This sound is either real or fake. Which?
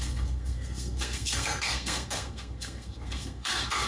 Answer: fake